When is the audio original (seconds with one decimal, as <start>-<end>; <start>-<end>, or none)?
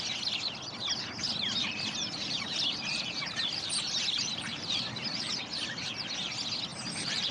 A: 0.0-1.6; 6.0-6.7